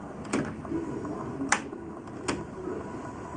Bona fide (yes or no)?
yes